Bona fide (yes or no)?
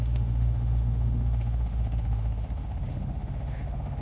no